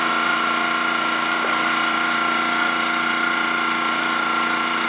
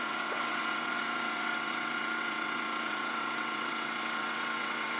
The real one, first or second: first